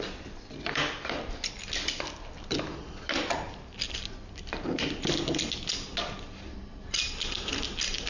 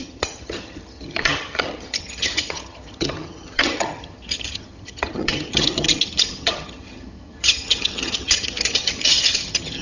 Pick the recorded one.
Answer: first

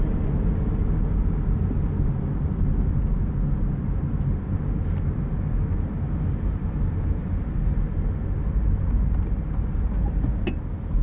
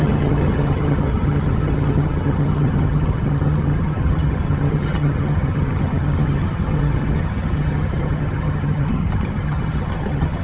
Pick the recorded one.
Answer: first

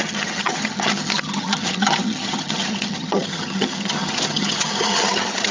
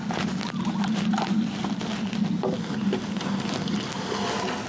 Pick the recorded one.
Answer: second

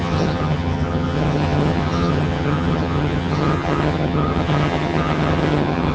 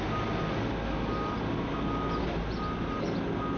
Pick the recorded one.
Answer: second